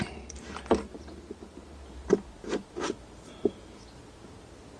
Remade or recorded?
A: recorded